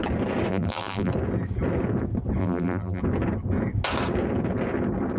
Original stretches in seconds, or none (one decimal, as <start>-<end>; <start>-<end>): 0.0-0.5; 1.1-2.4; 3.0-5.2